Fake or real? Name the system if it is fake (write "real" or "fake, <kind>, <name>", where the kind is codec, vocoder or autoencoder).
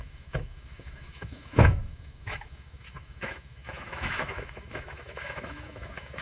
fake, autoencoder, DAC-VAE